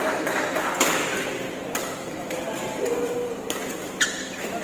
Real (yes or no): no